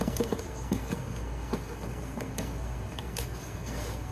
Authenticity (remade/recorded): remade